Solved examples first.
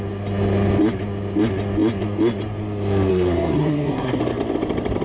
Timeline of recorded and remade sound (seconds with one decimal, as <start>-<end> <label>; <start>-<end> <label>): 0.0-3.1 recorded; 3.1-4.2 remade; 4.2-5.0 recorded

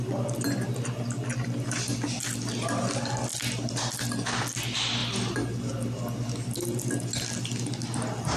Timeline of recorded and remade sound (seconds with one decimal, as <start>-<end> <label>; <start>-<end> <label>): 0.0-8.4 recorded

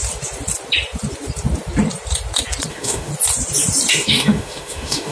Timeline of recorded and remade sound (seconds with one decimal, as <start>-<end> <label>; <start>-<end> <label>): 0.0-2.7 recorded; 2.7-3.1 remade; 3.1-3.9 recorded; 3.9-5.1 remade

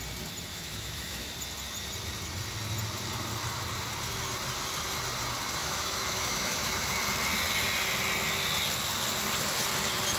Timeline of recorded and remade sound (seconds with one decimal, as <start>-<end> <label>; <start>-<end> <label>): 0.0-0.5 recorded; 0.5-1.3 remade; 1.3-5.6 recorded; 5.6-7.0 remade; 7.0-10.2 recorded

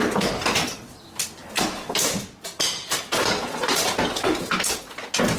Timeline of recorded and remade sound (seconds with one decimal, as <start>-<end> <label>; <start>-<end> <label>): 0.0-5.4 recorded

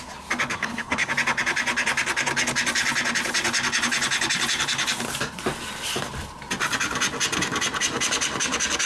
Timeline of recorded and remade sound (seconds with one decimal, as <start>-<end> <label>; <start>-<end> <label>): 0.0-0.5 recorded; 0.5-1.1 remade; 1.1-8.9 recorded